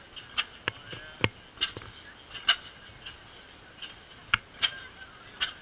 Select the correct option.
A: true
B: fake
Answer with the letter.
A